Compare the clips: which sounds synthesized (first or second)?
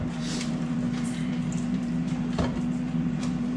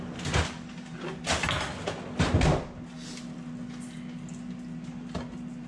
first